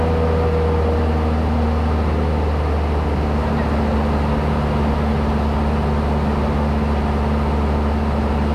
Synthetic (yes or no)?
no